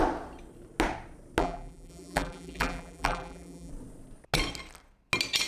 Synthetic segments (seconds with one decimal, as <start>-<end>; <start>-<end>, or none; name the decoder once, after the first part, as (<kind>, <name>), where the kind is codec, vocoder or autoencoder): 1.4-3.7 (vocoder, BigVGAN v2)